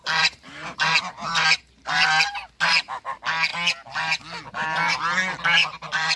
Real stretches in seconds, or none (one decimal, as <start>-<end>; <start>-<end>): 1.6-5.6